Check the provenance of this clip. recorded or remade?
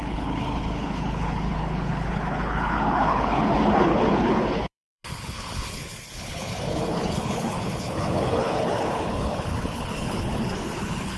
remade